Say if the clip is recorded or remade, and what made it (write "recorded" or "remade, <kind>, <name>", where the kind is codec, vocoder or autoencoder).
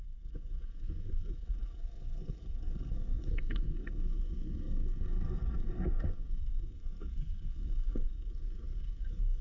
remade, codec, SNAC